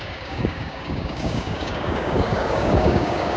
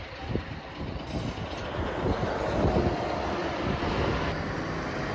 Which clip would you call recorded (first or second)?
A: second